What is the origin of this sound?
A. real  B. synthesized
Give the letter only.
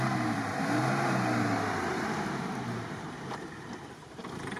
B